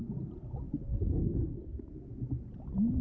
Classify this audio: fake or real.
real